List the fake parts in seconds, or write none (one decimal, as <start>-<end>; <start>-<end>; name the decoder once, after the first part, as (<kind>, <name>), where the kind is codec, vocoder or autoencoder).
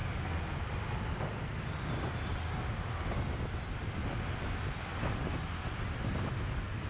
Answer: none